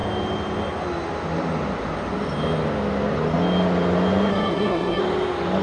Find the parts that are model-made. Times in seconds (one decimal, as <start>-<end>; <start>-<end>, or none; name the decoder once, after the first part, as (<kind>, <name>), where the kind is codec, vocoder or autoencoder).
4.3-5.0 (codec, SNAC)